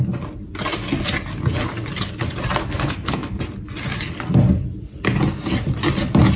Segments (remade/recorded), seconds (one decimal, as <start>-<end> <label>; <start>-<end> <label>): 0.0-2.6 recorded; 2.6-3.4 remade; 3.4-6.4 recorded